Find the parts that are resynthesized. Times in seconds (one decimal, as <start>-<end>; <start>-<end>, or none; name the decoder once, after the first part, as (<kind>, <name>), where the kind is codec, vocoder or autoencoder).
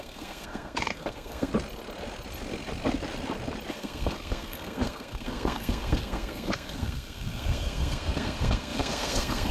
0.0-1.5 (codec, SNAC); 3.7-9.5